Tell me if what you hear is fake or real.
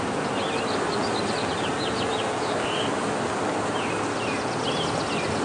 real